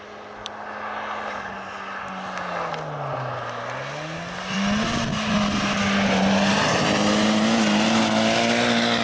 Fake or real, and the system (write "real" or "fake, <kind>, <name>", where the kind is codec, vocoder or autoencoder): real